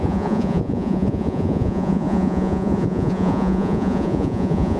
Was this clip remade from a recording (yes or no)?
yes